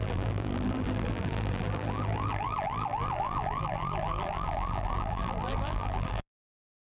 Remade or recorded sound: remade